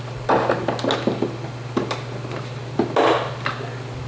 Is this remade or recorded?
recorded